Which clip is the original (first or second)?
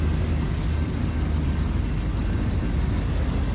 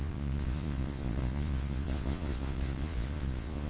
first